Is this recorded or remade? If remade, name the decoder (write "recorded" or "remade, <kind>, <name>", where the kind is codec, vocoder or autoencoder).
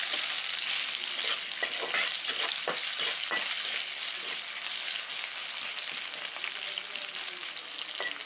recorded